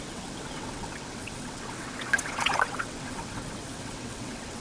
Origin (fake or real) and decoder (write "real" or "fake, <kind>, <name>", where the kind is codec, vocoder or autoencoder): fake, vocoder, WaveNeXt